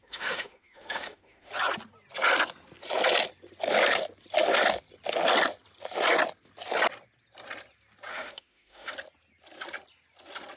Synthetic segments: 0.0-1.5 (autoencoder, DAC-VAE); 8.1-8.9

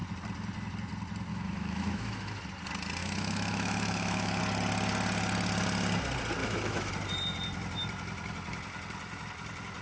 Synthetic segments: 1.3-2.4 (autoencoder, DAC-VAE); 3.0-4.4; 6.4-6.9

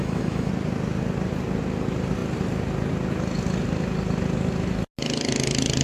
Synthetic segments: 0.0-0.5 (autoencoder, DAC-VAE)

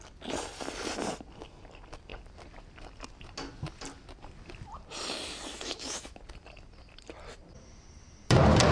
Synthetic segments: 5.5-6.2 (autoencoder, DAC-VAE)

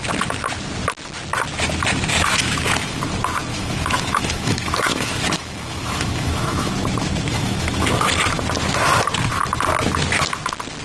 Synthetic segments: 2.1-3.0 (autoencoder, DAC-VAE); 3.5-6.7; 7.3-8.1

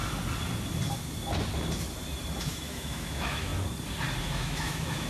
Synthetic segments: 2.4-3.5 (autoencoder, DAC-VAE); 4.2-5.1